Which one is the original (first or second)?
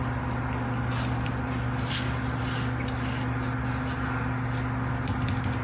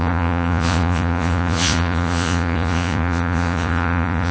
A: first